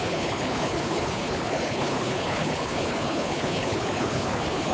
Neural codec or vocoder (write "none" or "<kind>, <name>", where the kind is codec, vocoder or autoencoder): codec, HILCodec